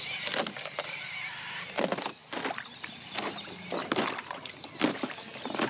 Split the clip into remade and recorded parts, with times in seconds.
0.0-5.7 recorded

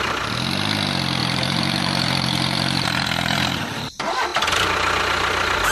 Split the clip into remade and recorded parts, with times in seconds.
0.0-1.2 recorded; 1.2-3.9 remade; 3.9-5.7 recorded

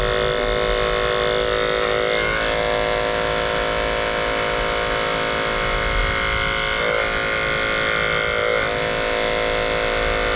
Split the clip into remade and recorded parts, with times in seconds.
0.0-10.4 recorded

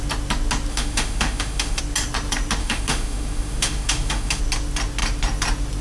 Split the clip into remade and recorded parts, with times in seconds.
0.0-0.7 recorded; 0.7-1.8 remade; 1.8-2.6 recorded; 2.6-4.4 remade; 4.4-5.8 recorded

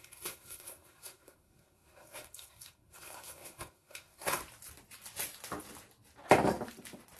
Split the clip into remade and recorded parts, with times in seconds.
0.0-4.4 remade; 4.4-7.2 recorded

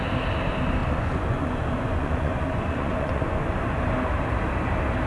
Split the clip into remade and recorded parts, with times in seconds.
0.0-0.8 recorded; 0.8-3.9 remade; 3.9-5.1 recorded

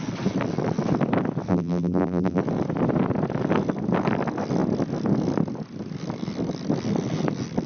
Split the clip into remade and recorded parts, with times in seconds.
0.0-1.5 recorded; 1.5-2.4 remade; 2.4-7.7 recorded

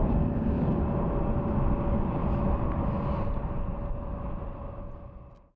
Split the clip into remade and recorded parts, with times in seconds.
0.0-0.8 remade; 0.8-1.7 recorded; 1.7-2.2 remade; 2.2-5.6 recorded